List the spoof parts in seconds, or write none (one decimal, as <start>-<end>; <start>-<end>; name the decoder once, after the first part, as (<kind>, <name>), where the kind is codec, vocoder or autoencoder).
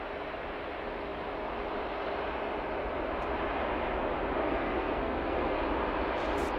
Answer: 4.4-5.6 (codec, SNAC)